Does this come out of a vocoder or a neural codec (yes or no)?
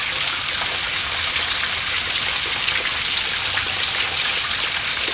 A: no